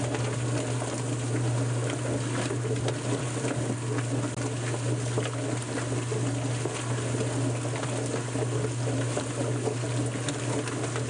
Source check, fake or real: real